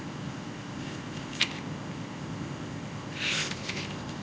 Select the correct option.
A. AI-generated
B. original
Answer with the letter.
A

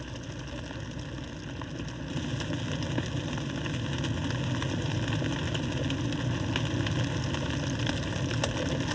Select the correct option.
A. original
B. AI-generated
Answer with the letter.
A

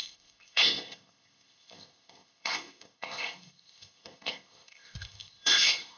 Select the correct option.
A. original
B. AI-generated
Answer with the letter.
B